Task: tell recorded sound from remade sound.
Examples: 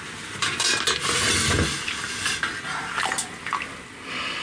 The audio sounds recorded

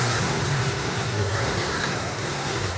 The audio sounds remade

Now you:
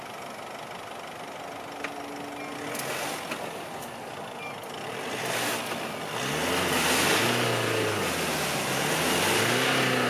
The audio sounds recorded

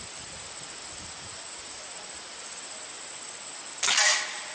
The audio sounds recorded